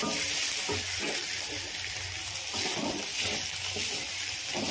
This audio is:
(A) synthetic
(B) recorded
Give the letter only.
B